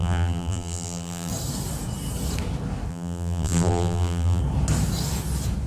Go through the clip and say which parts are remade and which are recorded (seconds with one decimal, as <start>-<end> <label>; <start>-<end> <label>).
0.0-1.3 remade; 1.3-2.9 recorded; 2.9-4.4 remade; 4.4-5.7 recorded